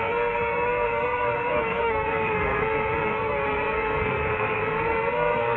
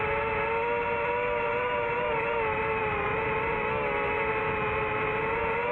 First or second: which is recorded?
second